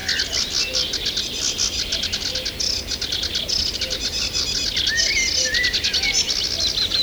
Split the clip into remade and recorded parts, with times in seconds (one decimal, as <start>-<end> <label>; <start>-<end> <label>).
0.0-7.0 recorded